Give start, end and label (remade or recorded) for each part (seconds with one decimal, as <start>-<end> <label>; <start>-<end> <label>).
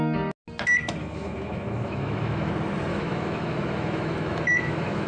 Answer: 0.0-1.0 recorded; 1.0-2.5 remade; 2.5-2.9 recorded; 2.9-5.1 remade